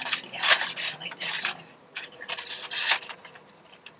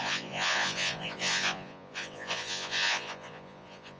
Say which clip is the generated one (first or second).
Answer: second